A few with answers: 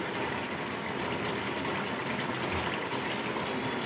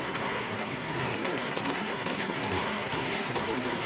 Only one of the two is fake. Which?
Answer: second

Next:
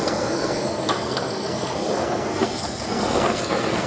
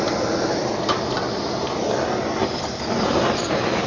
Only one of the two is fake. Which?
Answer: first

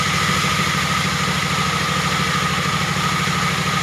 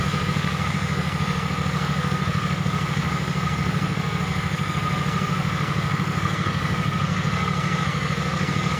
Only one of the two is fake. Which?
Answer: second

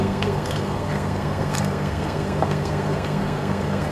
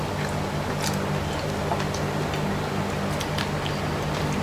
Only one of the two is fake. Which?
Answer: first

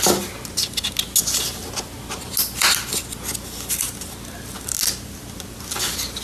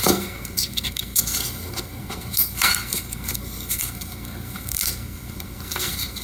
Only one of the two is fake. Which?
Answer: second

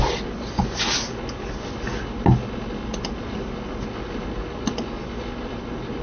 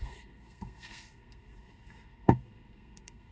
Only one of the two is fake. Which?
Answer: second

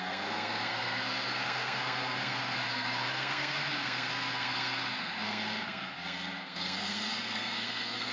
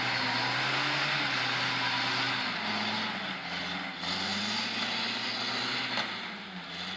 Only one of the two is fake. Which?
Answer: first